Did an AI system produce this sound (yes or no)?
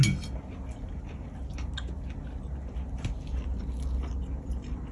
no